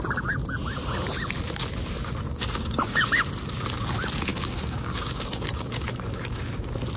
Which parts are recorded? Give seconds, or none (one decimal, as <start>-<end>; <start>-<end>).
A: 0.0-2.3; 3.2-4.3; 6.4-7.0